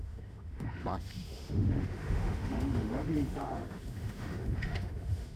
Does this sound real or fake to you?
fake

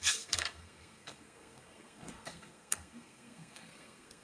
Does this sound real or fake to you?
fake